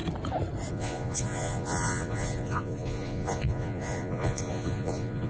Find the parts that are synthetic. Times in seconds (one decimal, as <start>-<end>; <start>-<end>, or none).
0.7-5.3